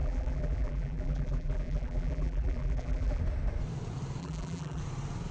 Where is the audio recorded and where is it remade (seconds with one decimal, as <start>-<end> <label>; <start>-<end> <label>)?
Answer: 0.0-3.2 remade; 3.2-4.2 recorded; 4.2-4.8 remade; 4.8-5.3 recorded